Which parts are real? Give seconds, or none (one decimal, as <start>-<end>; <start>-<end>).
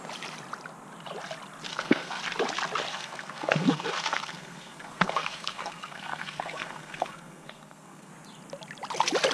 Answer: 0.0-1.7; 2.2-2.9; 8.1-9.3